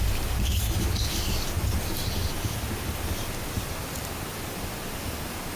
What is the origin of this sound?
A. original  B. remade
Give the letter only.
A